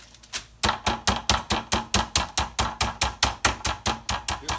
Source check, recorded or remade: recorded